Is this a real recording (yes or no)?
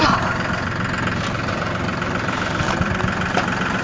yes